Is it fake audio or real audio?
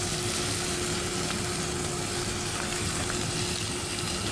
real